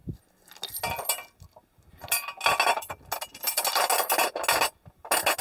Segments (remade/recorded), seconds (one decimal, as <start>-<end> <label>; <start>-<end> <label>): 0.0-5.4 recorded